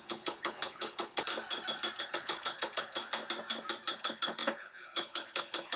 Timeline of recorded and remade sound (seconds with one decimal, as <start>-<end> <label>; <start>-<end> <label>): 0.0-1.3 remade; 1.3-2.0 recorded; 2.0-3.0 remade; 3.0-3.9 recorded; 3.9-5.8 remade